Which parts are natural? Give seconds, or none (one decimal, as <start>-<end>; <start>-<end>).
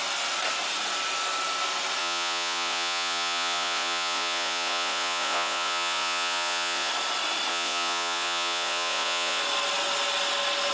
0.0-2.0; 6.9-7.5; 9.4-10.7